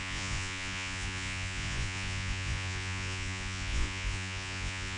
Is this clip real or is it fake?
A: fake